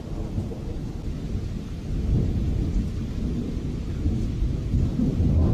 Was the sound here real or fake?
real